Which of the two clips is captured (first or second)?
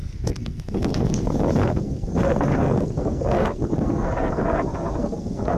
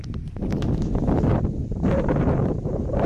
second